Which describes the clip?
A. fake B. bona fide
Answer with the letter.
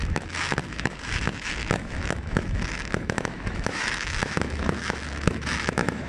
A